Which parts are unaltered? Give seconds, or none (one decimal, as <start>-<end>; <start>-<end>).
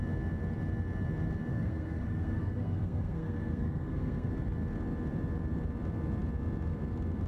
0.0-1.5; 4.3-7.3